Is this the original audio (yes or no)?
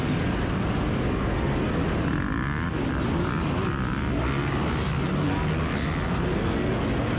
yes